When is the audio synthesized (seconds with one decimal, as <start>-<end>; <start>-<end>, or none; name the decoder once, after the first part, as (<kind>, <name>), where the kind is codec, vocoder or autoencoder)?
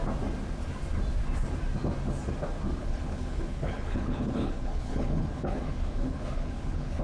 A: 2.8-7.0 (codec, HILCodec)